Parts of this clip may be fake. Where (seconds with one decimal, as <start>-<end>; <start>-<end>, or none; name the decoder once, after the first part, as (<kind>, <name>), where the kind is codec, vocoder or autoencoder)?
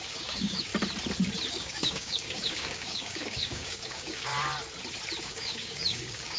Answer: 0.0-0.7 (codec, DAC); 1.5-4.3; 5.2-6.4